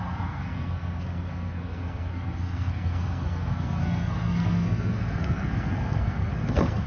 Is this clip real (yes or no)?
no